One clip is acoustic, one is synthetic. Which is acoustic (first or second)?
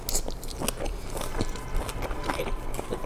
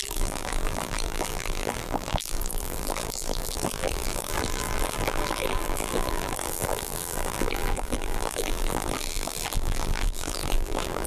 first